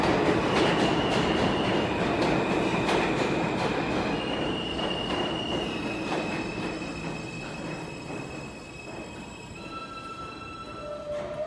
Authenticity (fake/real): real